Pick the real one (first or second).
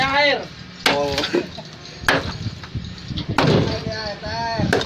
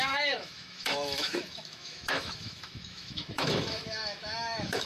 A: first